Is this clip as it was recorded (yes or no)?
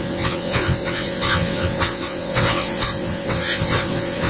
no